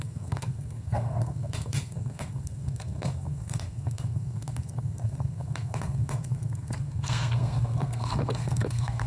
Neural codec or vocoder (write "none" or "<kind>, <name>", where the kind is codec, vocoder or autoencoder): codec, SNAC